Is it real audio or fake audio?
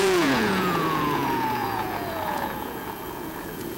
fake